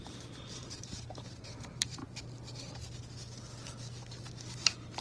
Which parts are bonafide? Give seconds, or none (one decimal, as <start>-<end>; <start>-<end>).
2.0-4.5